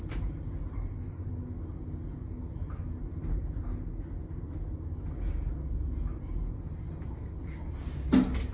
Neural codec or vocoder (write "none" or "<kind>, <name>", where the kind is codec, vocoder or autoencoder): none